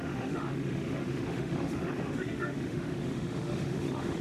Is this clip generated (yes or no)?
yes